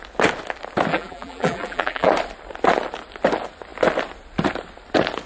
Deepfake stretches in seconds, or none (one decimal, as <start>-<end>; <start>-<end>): 0.9-2.1